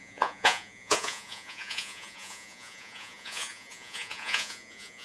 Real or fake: fake